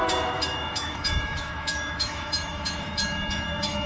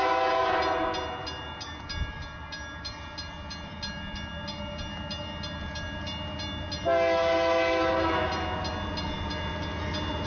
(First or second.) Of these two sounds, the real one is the second